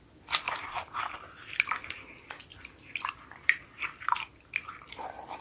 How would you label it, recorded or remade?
remade